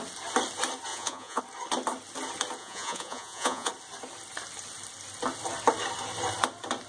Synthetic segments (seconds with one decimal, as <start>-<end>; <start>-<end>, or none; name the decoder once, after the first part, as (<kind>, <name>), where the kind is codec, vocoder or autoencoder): 0.9-1.4 (vocoder, Vocos); 2.6-3.7